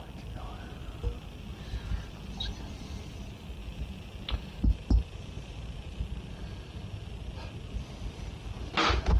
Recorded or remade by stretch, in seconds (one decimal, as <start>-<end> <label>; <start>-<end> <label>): 0.0-3.6 recorded; 3.6-6.0 remade; 6.0-9.2 recorded